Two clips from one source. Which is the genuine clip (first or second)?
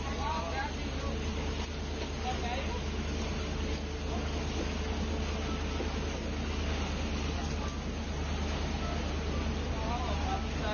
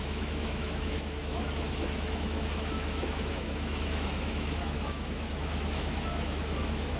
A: first